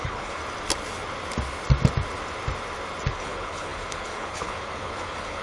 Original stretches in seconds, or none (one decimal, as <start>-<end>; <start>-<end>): 0.4-3.1